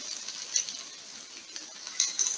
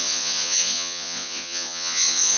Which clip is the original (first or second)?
first